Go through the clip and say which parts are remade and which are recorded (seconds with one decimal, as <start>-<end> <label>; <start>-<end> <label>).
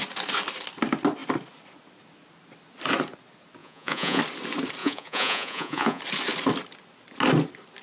0.0-3.6 recorded; 3.6-4.2 remade; 4.2-4.8 recorded; 4.8-6.0 remade; 6.0-7.8 recorded